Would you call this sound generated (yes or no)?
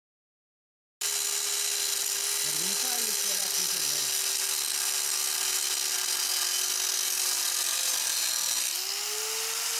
no